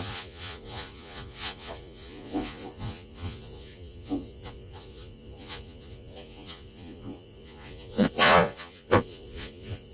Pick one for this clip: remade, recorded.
remade